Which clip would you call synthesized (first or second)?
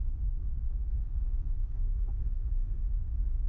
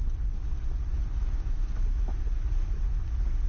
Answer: first